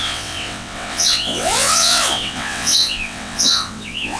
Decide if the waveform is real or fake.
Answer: fake